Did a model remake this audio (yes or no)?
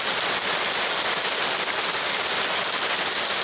no